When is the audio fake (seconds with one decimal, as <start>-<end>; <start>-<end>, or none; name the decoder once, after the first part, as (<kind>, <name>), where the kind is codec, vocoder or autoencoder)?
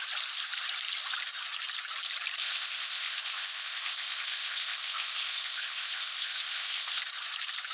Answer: 2.4-7.0 (codec, ZipCodec)